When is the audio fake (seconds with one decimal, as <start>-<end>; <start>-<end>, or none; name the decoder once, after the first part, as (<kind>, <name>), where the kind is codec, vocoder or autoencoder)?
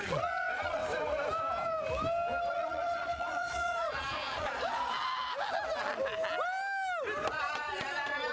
0.0-0.8 (vocoder, Vocos); 2.5-4.9; 7.3-8.3